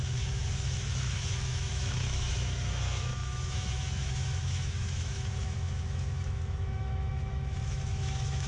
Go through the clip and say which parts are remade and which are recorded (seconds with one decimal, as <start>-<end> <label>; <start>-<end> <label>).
0.0-8.5 remade